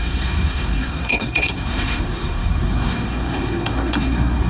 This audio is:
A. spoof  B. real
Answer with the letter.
A